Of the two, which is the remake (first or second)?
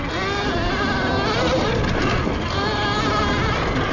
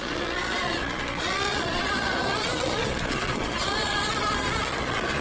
second